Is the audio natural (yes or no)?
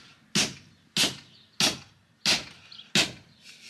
yes